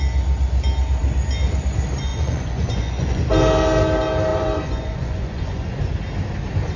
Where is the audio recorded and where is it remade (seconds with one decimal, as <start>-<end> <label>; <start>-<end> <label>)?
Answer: 0.0-2.1 recorded; 2.1-3.3 remade; 3.3-4.3 recorded; 4.3-5.9 remade; 5.9-6.8 recorded